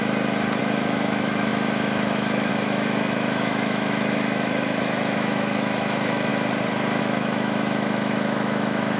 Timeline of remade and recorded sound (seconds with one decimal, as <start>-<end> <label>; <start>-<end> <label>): 0.0-0.6 recorded; 0.6-6.3 remade; 6.3-7.0 recorded; 7.0-9.0 remade